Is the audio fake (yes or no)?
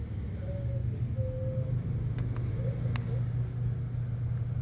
no